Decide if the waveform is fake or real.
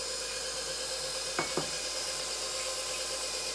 real